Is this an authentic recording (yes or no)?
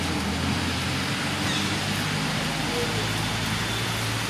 yes